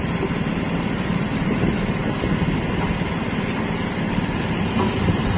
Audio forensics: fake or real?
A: real